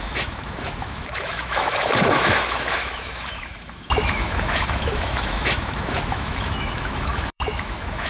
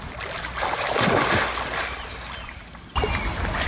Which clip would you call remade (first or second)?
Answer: first